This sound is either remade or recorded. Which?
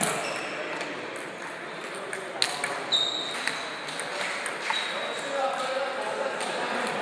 recorded